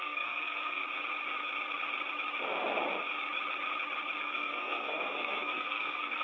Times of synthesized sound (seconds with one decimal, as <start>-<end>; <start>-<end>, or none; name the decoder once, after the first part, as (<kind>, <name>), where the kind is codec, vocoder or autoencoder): 0.0-0.8 (codec, SNAC); 4.2-6.2